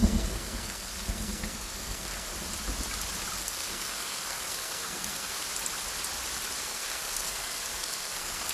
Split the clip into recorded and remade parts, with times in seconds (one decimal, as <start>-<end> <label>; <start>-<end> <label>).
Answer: 0.0-2.3 remade; 2.3-3.4 recorded; 3.4-5.4 remade; 5.4-6.6 recorded; 6.6-8.5 remade